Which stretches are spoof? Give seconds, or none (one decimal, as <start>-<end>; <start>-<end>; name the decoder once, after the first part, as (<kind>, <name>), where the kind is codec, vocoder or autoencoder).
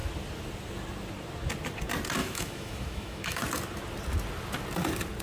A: 2.2-3.4 (autoencoder, DAC-VAE)